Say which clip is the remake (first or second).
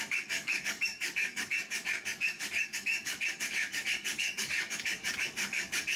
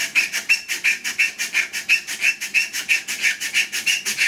first